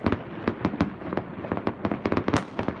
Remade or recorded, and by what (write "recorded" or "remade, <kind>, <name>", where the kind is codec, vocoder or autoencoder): recorded